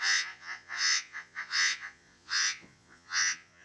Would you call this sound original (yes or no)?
no